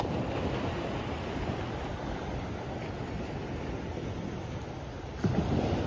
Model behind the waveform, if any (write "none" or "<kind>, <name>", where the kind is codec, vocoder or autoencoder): none